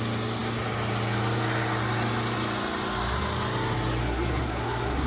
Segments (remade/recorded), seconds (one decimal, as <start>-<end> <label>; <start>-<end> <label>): 0.0-4.0 recorded; 4.0-5.1 remade